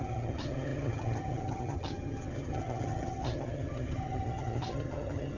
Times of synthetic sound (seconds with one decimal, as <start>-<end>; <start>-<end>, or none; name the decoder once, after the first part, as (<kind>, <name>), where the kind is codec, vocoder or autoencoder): 0.0-5.4 (vocoder, HiFi-GAN)